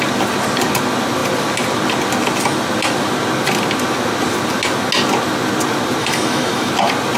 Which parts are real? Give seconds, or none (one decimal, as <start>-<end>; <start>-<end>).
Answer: 0.0-6.0; 6.7-7.2